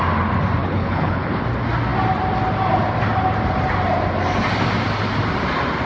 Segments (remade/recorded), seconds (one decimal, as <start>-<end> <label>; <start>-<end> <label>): 0.0-0.6 recorded; 0.6-1.4 remade; 1.4-5.9 recorded